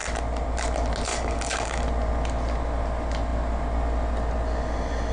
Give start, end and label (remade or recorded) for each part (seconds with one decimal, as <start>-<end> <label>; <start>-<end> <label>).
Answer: 0.0-1.1 recorded; 1.1-1.8 remade; 1.8-5.1 recorded